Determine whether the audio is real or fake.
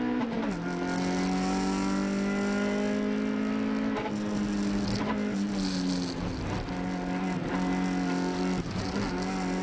real